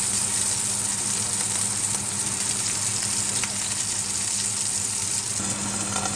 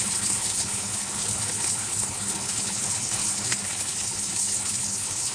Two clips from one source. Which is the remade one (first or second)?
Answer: second